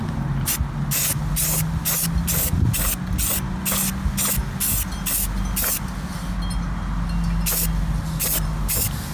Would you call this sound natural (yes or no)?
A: yes